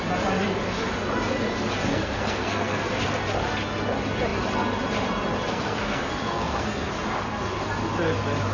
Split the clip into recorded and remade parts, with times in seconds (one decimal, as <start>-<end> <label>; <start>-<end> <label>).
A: 0.0-1.9 recorded; 1.9-3.0 remade; 3.0-5.5 recorded; 5.5-6.9 remade; 6.9-8.5 recorded